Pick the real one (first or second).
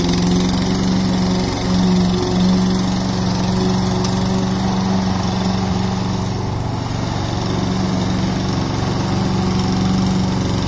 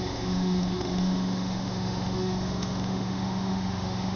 first